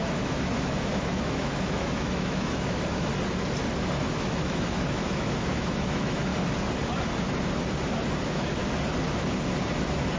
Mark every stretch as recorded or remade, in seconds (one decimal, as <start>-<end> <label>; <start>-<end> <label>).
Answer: 0.0-3.1 remade; 3.1-3.8 recorded; 3.8-6.3 remade; 6.3-8.2 recorded; 8.2-8.6 remade; 8.6-10.2 recorded